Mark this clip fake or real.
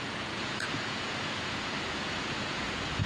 fake